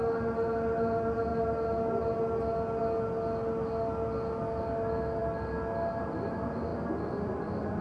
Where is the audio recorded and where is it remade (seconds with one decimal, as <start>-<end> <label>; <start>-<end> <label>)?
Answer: 0.0-7.8 recorded